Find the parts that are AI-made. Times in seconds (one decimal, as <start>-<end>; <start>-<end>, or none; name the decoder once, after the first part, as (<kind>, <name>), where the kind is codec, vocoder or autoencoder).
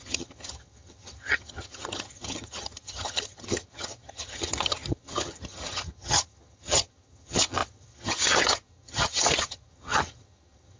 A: 0.0-10.8 (vocoder, HiFi-GAN)